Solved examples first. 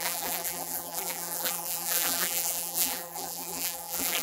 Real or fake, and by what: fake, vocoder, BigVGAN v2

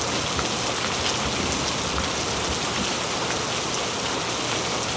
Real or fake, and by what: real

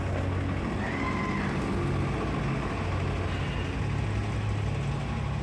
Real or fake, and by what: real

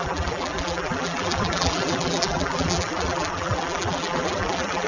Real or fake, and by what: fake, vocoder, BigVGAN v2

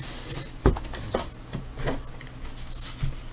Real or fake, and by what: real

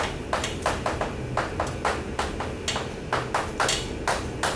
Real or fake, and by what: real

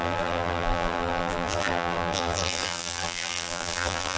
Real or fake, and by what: fake, vocoder, BigVGAN v2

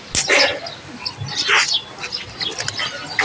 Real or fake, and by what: real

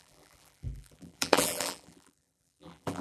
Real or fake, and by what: fake, vocoder, BigVGAN v2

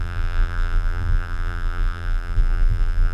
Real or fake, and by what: fake, vocoder, BigVGAN v2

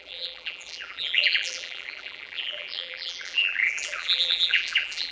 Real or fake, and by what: fake, vocoder, BigVGAN v2